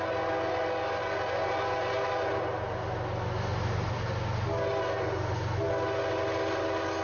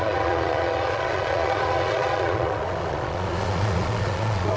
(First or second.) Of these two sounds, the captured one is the first